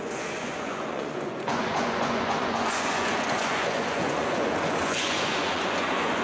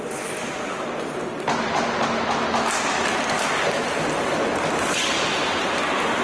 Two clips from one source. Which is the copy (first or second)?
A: first